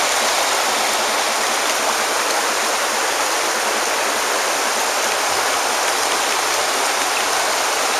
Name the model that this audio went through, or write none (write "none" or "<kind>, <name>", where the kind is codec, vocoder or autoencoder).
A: none